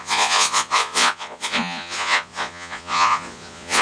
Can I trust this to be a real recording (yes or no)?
no